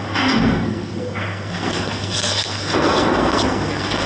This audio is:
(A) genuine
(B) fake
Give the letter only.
B